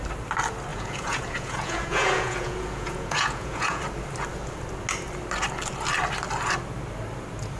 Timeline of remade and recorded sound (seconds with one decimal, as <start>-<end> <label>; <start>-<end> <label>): 0.0-0.7 recorded; 0.7-3.8 remade; 3.8-7.6 recorded